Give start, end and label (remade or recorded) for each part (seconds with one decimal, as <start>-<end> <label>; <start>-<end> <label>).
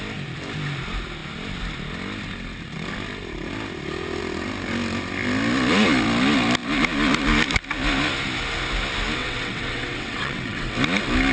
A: 0.0-9.2 recorded; 9.2-10.7 remade; 10.7-11.3 recorded